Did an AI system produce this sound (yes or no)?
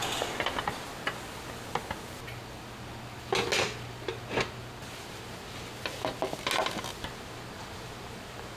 no